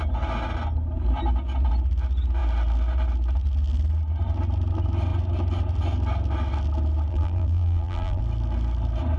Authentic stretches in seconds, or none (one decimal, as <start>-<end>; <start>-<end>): 0.0-7.1; 8.2-9.2